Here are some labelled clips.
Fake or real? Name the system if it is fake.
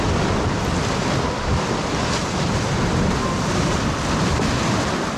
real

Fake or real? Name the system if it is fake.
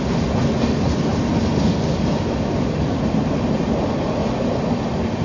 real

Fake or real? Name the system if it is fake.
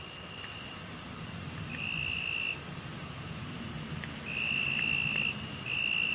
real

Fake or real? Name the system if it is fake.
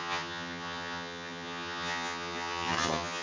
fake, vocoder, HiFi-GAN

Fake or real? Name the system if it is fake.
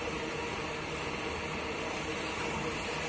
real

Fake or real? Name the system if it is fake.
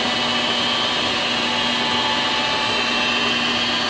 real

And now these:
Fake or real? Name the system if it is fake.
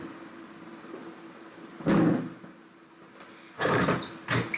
real